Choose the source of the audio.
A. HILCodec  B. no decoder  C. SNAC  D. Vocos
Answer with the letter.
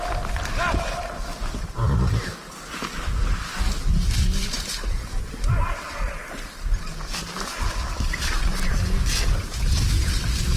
B